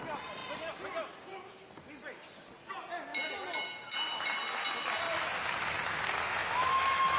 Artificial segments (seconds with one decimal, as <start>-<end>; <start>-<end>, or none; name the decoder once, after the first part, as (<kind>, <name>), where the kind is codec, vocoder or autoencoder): 6.4-7.2 (autoencoder, DAC-VAE)

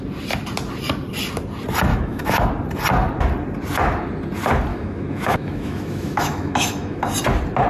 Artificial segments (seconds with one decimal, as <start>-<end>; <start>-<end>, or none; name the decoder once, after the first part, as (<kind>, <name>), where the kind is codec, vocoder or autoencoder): 1.9-2.4 (autoencoder, DAC-VAE); 4.7-7.0